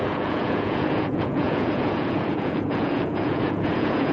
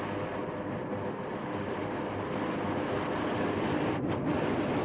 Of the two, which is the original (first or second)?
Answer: second